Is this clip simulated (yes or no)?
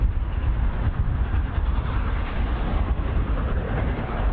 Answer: no